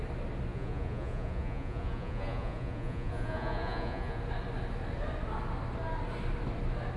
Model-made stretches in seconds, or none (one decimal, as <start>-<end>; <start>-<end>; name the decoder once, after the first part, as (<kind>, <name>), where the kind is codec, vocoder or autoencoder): 0.5-4.2 (vocoder, Vocos)